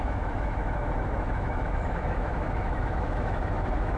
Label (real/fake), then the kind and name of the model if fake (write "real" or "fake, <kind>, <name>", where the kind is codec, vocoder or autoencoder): fake, autoencoder, DAC-VAE